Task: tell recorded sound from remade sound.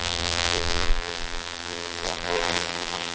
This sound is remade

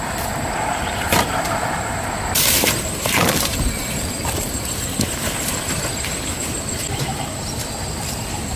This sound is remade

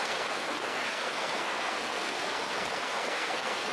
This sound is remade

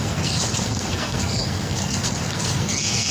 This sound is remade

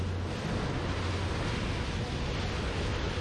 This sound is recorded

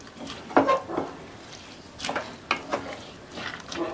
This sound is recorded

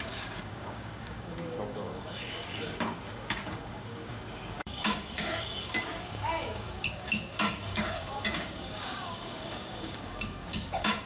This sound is remade